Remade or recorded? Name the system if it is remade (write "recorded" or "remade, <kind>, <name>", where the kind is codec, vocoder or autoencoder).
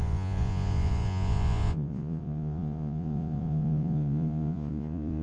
remade, vocoder, Vocos